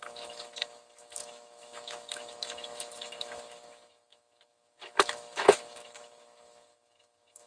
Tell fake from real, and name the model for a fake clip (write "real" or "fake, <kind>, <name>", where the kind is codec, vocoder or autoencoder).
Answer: fake, autoencoder, DAC-VAE